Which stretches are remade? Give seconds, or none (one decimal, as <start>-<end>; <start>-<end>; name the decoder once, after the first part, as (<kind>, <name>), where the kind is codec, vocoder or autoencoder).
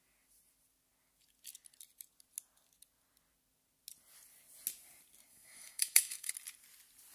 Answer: 5.3-6.3 (autoencoder, DAC-VAE)